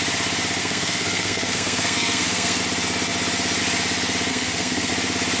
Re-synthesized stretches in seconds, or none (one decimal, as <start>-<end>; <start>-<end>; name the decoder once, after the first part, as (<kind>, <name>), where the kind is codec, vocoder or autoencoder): 0.6-2.6 (codec, SNAC); 4.3-4.9